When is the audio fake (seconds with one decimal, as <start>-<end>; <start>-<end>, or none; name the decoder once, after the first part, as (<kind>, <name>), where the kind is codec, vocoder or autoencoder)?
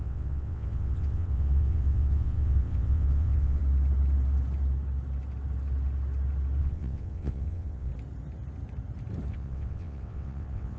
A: 0.0-3.6 (vocoder, WaveNeXt); 6.6-7.9; 9.3-10.8